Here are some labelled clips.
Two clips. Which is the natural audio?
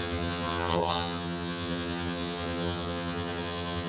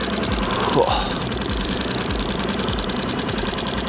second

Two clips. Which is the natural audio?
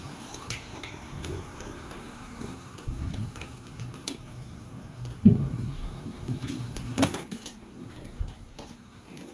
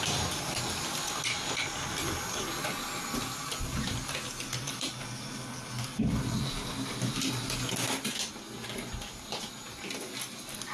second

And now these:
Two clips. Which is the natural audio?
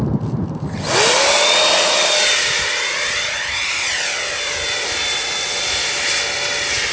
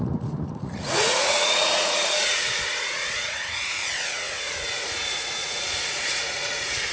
first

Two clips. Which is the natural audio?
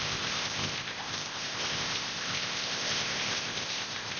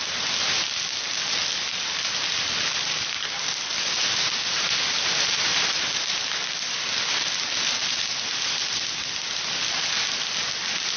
second